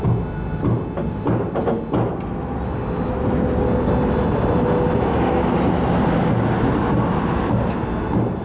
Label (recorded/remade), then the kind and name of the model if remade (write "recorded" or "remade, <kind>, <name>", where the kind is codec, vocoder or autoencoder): recorded